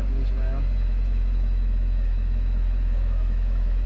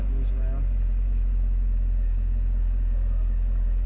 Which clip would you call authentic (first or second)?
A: second